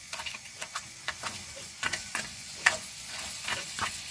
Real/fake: fake